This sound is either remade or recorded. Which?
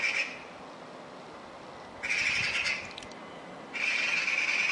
recorded